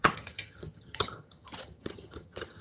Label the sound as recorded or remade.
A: remade